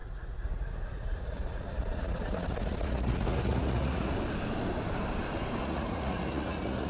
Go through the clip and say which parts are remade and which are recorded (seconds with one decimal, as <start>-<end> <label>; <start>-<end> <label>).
0.0-4.1 remade; 4.1-5.6 recorded; 5.6-6.9 remade